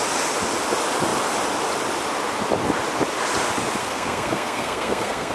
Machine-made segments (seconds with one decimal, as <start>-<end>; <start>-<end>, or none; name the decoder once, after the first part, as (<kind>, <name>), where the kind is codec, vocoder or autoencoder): 3.8-5.3 (codec, SNAC)